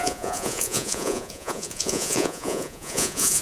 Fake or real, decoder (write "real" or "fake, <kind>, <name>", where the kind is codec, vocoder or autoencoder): fake, vocoder, Vocos